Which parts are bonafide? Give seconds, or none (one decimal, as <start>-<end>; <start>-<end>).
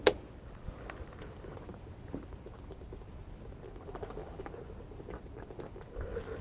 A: 0.0-6.4